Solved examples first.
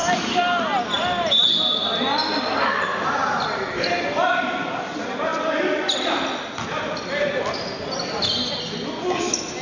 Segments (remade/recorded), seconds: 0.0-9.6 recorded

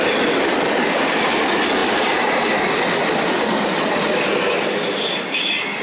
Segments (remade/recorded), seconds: 0.0-5.8 recorded

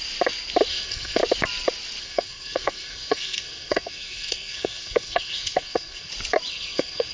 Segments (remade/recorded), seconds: 0.0-0.7 recorded; 0.7-1.2 remade; 1.2-2.0 recorded; 2.0-6.1 remade; 6.1-6.5 recorded; 6.5-7.1 remade

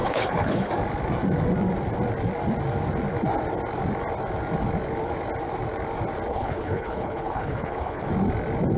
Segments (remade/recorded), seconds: 0.0-0.7 remade; 0.7-6.3 recorded; 6.3-8.1 remade; 8.1-8.8 recorded

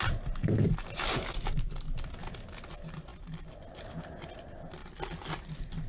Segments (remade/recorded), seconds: 0.0-3.1 recorded; 3.1-3.6 remade; 3.6-5.9 recorded